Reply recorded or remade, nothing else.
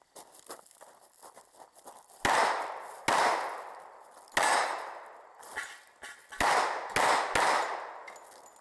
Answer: recorded